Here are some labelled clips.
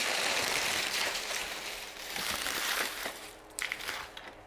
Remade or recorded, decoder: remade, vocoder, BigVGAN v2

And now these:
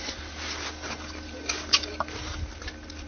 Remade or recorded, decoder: recorded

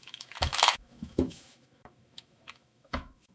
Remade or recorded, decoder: remade, autoencoder, DAC-VAE